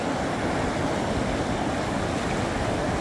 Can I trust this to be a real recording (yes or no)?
yes